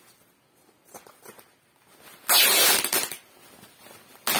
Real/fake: real